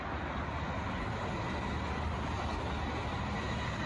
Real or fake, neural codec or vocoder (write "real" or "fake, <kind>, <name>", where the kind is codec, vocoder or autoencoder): real